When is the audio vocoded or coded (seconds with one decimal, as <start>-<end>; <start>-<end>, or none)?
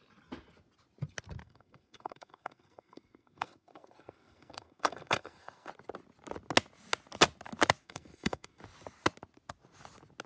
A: 1.4-5.7; 7.8-8.6